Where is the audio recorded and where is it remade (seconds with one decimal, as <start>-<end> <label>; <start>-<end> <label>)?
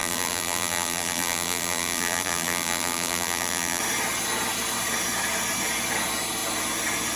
0.0-3.8 remade; 3.8-7.2 recorded